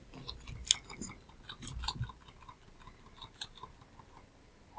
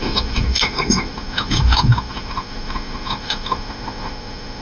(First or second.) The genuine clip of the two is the first